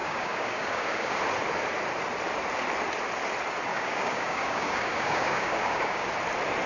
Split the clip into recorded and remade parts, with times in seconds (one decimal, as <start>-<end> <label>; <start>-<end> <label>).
0.0-1.2 remade; 1.2-3.7 recorded; 3.7-6.1 remade; 6.1-6.7 recorded